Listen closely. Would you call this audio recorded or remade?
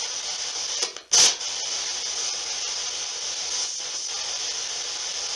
recorded